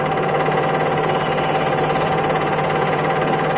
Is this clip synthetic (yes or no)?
yes